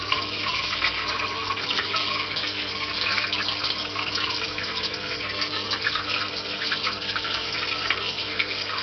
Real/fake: fake